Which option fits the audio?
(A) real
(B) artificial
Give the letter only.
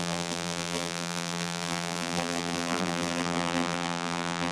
B